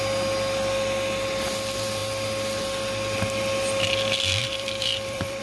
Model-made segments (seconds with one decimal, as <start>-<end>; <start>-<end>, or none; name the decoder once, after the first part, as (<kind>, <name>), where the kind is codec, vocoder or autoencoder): 4.4-5.4 (vocoder, BigVGAN v2)